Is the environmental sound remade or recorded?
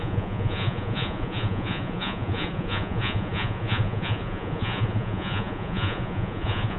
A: remade